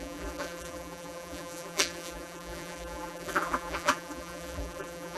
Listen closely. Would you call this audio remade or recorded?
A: remade